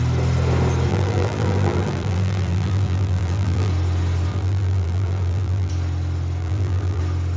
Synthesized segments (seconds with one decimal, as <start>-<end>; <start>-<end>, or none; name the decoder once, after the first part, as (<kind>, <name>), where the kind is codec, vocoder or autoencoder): 0.9-3.7 (vocoder, BigVGAN v2); 4.3-5.7; 6.4-7.0